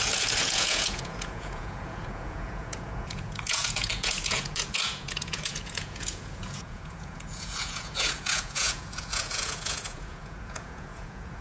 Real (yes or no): no